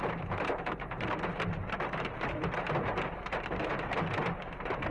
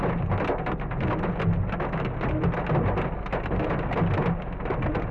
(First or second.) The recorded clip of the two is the second